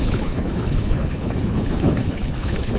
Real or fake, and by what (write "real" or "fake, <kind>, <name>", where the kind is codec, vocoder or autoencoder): fake, codec, HILCodec